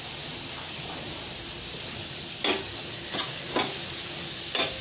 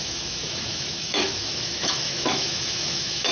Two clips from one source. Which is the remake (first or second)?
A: second